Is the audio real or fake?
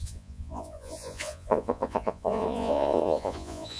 fake